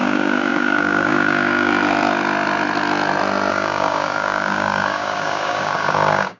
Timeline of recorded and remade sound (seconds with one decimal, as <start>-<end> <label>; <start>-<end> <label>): 0.0-1.7 remade; 1.7-3.5 recorded; 3.5-6.4 remade